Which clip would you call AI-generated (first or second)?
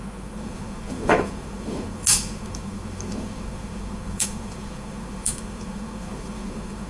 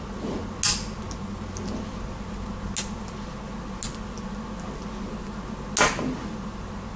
first